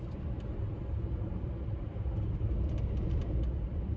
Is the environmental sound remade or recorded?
recorded